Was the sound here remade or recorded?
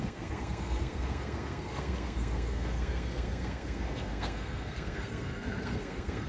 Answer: remade